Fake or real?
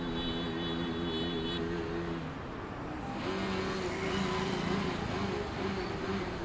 real